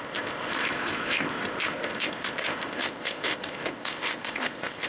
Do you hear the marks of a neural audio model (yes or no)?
yes